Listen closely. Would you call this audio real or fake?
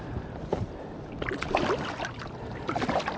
fake